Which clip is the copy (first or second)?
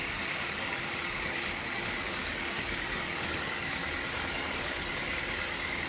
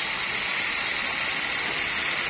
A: first